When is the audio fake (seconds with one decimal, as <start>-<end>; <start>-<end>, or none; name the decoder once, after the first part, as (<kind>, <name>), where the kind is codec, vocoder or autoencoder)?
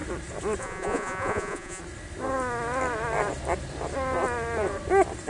0.6-1.8 (vocoder, Vocos)